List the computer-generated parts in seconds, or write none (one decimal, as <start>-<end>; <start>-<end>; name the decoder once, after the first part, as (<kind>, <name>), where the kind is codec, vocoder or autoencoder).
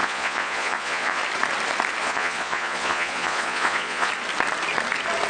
0.0-1.2 (vocoder, Vocos); 2.0-4.1